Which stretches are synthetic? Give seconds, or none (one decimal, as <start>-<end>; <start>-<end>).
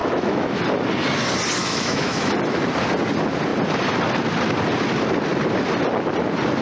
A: 0.0-0.6; 1.6-2.3